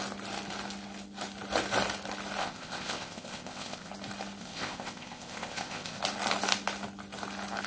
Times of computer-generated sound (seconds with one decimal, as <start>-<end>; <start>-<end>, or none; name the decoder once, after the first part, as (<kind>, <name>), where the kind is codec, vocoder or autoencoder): 2.4-3.9 (codec, ZipCodec); 4.4-6.0